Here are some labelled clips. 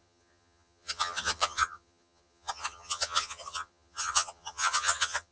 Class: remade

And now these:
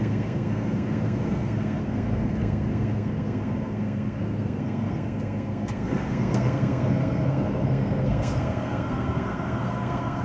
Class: remade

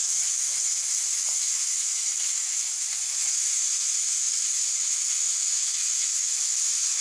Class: remade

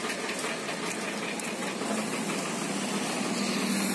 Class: recorded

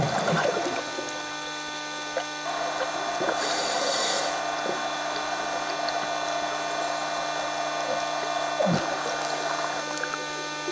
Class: recorded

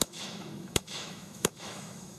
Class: remade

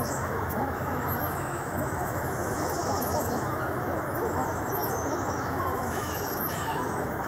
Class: remade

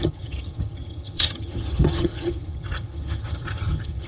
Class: remade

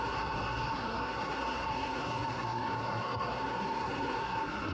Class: remade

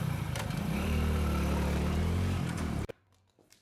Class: remade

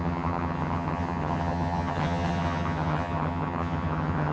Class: remade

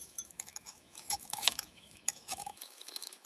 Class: remade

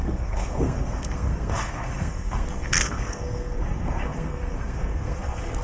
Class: remade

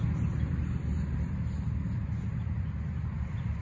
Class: recorded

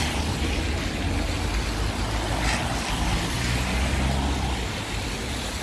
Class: recorded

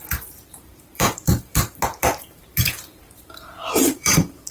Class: remade